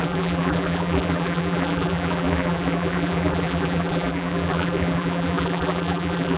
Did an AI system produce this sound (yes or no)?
yes